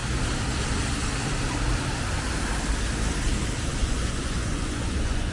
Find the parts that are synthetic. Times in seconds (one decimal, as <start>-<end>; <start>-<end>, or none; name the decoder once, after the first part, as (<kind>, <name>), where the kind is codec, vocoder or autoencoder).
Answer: 3.7-5.3 (vocoder, Vocos)